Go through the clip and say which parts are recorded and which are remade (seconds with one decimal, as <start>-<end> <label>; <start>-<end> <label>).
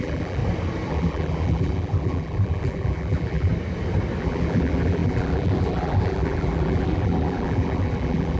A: 0.0-0.4 remade; 0.4-0.9 recorded; 0.9-3.5 remade; 3.5-4.2 recorded; 4.2-8.4 remade